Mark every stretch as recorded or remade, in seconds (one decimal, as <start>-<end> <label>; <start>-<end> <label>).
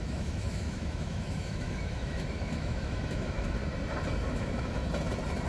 0.0-3.6 remade; 3.6-4.3 recorded; 4.3-4.8 remade; 4.8-5.5 recorded